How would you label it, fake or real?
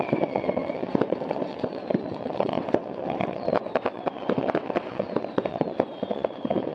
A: fake